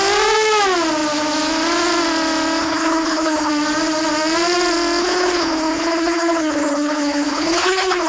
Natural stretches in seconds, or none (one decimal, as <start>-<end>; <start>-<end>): 0.0-2.6; 3.5-5.0